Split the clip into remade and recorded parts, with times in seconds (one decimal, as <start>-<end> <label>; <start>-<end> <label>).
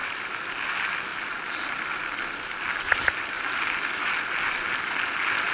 0.0-5.5 recorded